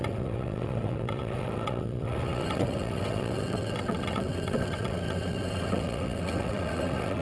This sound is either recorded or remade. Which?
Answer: remade